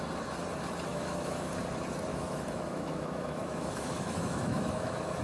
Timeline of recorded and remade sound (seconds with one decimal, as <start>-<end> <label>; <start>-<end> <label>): 0.0-0.9 recorded; 0.9-1.5 remade; 1.5-2.1 recorded; 2.1-5.2 remade